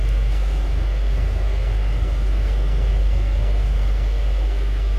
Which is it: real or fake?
fake